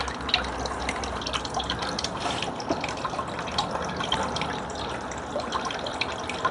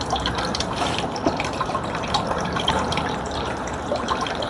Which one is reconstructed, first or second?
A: second